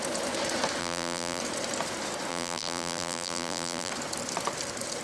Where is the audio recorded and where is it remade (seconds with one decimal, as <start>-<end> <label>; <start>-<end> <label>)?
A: 0.0-0.8 recorded; 0.8-1.4 remade; 1.4-2.3 recorded; 2.3-3.9 remade; 3.9-5.0 recorded